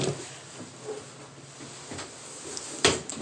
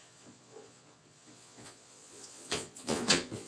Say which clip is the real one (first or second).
first